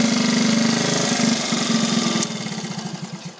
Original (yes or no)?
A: yes